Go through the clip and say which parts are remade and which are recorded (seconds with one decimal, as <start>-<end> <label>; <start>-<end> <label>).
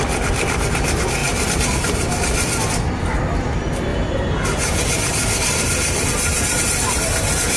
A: 0.0-1.2 recorded; 1.2-3.1 remade; 3.1-3.9 recorded; 3.9-6.6 remade; 6.6-7.6 recorded